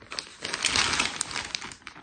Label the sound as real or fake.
real